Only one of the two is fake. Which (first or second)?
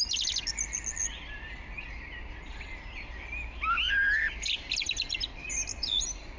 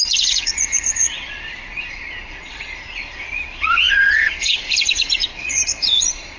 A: second